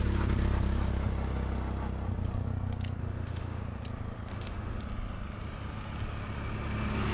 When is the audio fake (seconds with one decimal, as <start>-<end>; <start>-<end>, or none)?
3.0-3.6; 4.3-4.8